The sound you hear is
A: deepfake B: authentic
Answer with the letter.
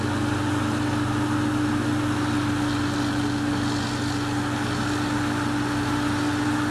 B